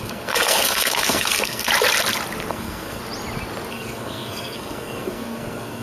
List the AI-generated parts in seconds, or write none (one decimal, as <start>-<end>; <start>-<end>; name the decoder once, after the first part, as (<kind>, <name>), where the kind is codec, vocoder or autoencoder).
0.0-1.7 (codec, SNAC); 2.5-3.0; 3.7-5.8

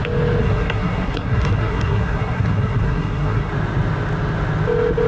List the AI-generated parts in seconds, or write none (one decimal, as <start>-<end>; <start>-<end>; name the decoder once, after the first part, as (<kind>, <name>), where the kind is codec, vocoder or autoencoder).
0.4-3.5 (codec, SNAC)